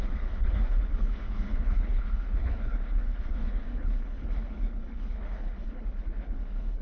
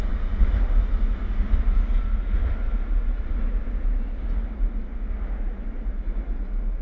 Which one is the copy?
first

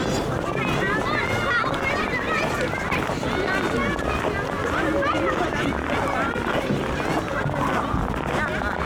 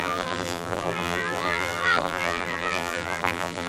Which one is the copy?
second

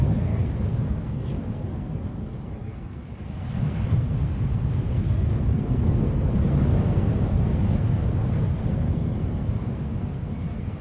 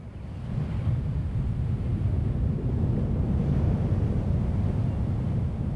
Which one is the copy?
first